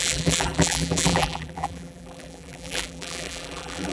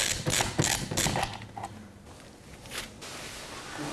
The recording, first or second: second